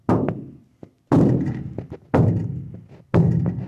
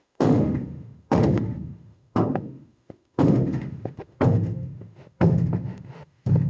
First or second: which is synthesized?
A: second